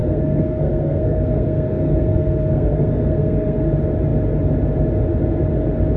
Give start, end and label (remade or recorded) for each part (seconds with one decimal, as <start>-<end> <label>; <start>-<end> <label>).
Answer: 0.0-3.6 remade; 3.6-6.0 recorded

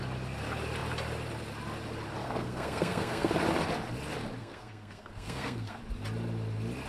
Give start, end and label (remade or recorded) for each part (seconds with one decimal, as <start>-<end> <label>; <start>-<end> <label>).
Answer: 0.0-2.2 recorded; 2.2-3.3 remade; 3.3-4.4 recorded; 4.4-5.8 remade; 5.8-6.9 recorded

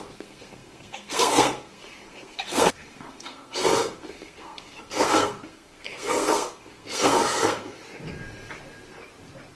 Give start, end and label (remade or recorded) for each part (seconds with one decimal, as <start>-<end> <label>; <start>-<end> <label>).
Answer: 0.0-7.8 remade; 7.8-9.6 recorded

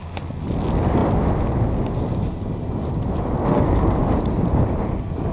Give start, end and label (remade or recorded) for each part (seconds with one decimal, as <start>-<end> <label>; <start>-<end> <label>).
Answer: 0.0-3.5 recorded; 3.5-4.0 remade; 4.0-5.3 recorded